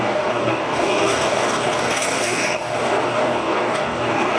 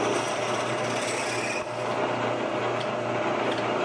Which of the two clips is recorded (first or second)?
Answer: second